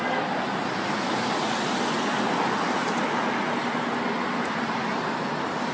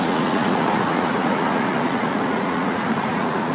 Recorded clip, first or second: first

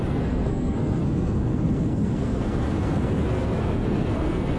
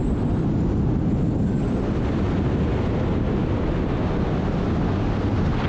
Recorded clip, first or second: second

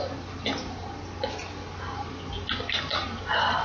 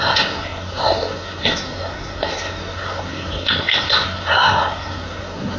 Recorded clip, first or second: first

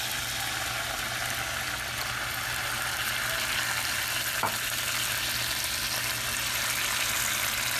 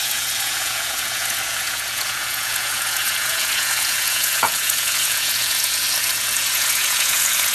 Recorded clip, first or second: first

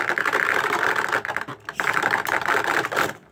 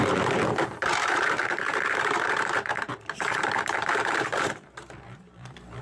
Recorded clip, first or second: first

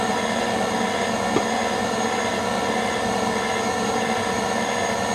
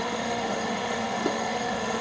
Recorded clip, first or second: first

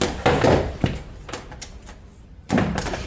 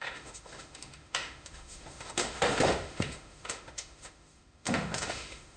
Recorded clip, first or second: first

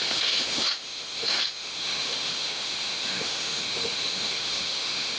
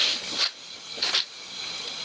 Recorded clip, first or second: second